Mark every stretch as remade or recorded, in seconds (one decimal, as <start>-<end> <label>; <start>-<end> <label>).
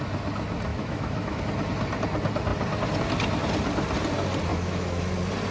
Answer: 0.0-0.7 recorded; 0.7-1.4 remade; 1.4-4.5 recorded; 4.5-5.1 remade; 5.1-5.5 recorded